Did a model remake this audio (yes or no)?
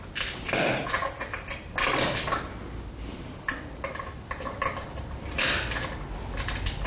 no